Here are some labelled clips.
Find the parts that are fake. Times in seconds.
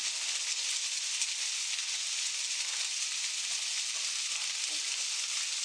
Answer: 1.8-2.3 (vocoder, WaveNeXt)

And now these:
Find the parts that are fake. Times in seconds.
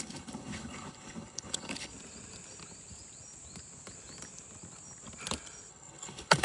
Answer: 0.0-1.9 (codec, HILCodec); 5.7-6.4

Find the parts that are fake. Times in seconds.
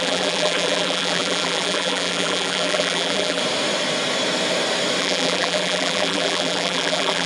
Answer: 0.0-3.4 (vocoder, BigVGAN v2); 5.0-7.3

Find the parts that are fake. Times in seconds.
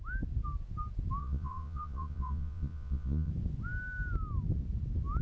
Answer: 1.2-3.3 (vocoder, Vocos)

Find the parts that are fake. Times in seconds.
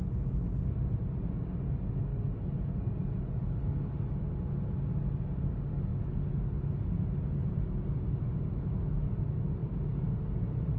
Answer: none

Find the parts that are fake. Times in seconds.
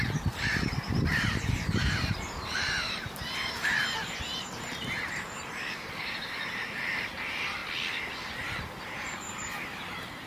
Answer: 0.0-7.6 (vocoder, BigVGAN v2); 8.8-10.3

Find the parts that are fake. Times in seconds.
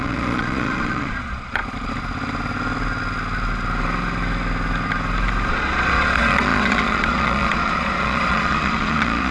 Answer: 0.0-1.6 (vocoder, Vocos); 5.5-9.3